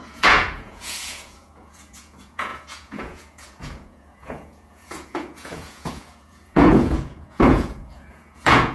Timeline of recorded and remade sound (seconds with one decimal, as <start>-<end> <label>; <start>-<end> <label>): 0.0-8.7 remade